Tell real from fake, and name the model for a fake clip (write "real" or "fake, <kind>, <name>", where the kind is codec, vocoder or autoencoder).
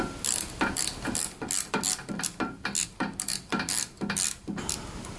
real